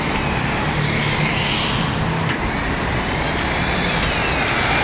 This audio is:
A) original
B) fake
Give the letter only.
A